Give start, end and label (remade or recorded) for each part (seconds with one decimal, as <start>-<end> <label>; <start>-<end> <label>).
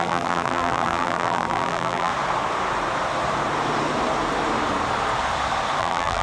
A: 0.0-2.1 remade; 2.1-5.8 recorded; 5.8-6.2 remade